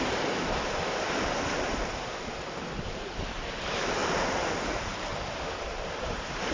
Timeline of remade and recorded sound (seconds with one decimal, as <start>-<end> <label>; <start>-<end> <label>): 0.0-4.0 remade; 4.0-4.6 recorded; 4.6-5.1 remade; 5.1-5.7 recorded; 5.7-6.5 remade